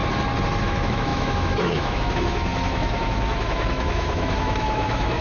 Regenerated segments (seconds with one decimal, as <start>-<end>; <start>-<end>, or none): 0.6-5.2